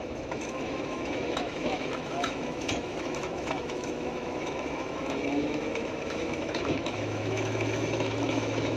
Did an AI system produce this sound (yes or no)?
yes